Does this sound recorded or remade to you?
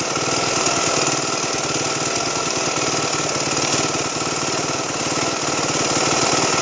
recorded